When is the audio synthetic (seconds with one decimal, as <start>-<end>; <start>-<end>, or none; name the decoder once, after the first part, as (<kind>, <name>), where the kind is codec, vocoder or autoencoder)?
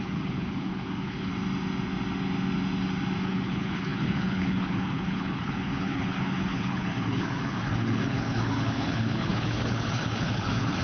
0.0-1.3 (codec, HILCodec); 3.2-10.8